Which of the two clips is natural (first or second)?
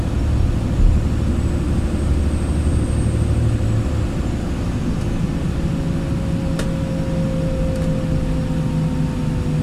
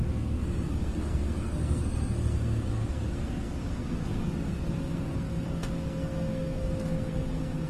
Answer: first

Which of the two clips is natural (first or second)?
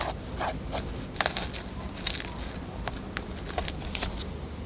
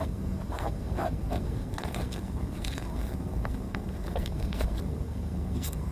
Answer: first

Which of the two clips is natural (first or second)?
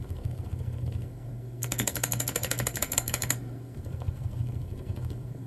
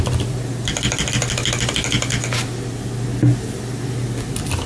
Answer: second